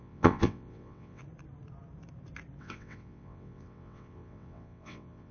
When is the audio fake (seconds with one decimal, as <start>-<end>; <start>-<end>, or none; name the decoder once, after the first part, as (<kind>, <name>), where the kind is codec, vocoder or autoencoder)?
0.0-1.2 (vocoder, WaveNeXt); 2.6-5.3

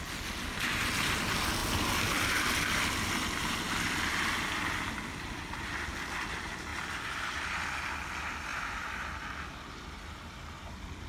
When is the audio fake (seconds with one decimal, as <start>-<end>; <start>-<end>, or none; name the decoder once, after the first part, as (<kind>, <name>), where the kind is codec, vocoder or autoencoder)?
6.7-7.8 (vocoder, BigVGAN v2)

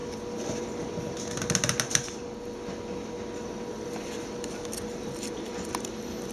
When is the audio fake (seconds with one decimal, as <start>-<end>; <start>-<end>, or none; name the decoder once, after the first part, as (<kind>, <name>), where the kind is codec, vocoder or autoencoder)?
none

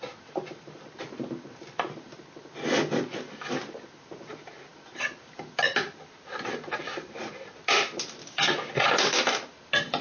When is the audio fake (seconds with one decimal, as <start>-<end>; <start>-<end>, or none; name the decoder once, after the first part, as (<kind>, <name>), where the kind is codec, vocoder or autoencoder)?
8.2-8.7 (codec, DAC)

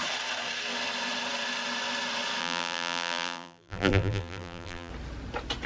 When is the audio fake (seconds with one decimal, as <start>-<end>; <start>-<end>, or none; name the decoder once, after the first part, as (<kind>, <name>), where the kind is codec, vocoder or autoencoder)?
2.4-4.9 (vocoder, BigVGAN v2)

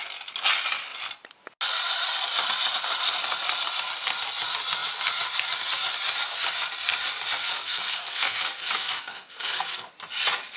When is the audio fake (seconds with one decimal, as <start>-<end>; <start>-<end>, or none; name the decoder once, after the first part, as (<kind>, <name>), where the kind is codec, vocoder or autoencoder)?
7.5-9.9 (codec, SNAC)

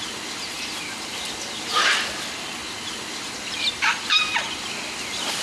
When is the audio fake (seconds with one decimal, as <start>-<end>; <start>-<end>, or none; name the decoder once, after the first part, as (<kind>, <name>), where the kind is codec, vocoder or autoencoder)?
none

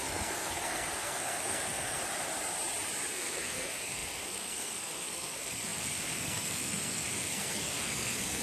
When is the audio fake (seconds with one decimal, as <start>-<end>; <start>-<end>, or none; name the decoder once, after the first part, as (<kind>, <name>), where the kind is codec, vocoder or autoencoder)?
0.0-2.0 (codec, SNAC); 3.1-8.4